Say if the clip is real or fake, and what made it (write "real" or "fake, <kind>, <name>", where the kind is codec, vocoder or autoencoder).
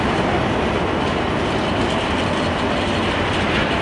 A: real